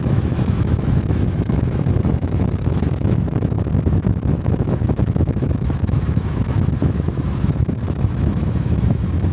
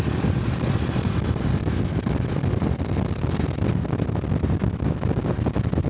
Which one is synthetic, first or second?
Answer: first